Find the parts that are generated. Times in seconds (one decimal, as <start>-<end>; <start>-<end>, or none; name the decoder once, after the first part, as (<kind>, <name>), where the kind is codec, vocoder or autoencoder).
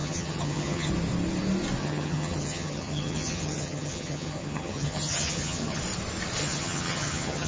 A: 0.0-0.9 (vocoder, HiFi-GAN); 1.8-5.8; 6.4-7.5